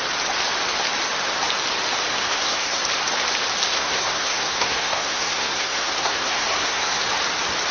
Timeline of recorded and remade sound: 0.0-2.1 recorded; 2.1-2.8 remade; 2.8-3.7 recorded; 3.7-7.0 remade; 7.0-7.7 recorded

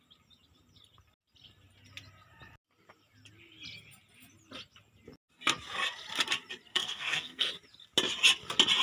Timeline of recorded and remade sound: 0.0-6.7 recorded; 6.7-7.5 remade; 7.5-8.8 recorded

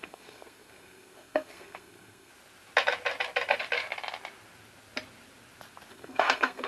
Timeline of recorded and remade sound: 0.0-2.3 remade; 2.3-5.9 recorded; 5.9-6.7 remade

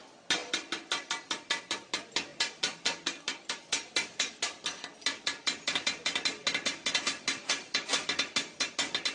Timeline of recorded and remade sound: 0.0-9.1 recorded

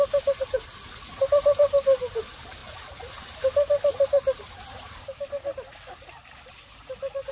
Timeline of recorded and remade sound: 0.0-7.3 recorded

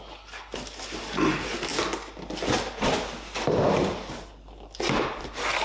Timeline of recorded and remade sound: 0.0-5.6 recorded

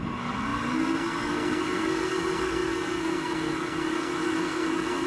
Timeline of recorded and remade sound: 0.0-5.1 remade